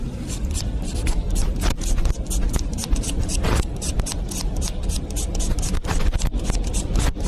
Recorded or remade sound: recorded